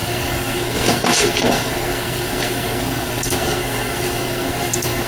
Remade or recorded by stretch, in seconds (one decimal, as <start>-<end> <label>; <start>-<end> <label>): 0.0-5.1 remade